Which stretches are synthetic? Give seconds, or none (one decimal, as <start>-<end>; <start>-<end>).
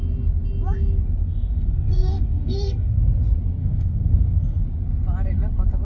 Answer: 1.2-3.0; 3.6-4.6